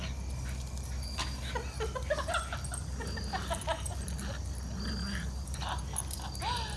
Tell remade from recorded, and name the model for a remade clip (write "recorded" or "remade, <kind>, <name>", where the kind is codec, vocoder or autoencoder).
recorded